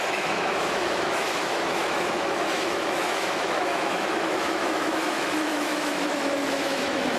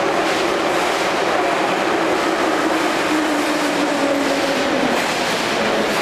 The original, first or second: second